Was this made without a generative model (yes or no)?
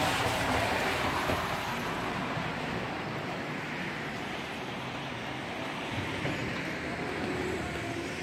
no